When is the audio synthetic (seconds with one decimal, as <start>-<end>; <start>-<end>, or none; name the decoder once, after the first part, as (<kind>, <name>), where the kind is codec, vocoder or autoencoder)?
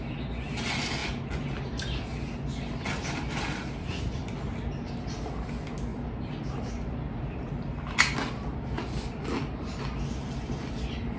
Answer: none